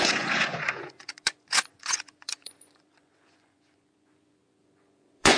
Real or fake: fake